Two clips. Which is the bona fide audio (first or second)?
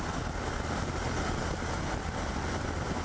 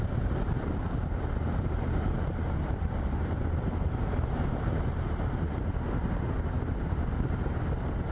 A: first